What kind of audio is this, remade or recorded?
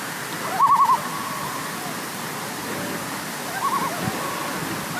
recorded